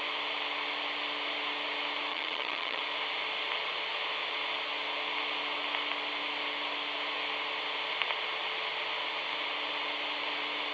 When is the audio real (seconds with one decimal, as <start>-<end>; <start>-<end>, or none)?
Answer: 0.0-2.1; 2.8-10.7